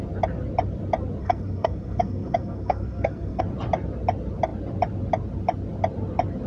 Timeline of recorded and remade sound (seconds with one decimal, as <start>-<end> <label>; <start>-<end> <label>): 0.0-1.2 recorded; 1.2-3.4 remade; 3.4-6.5 recorded